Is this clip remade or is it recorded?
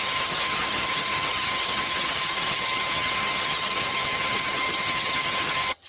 remade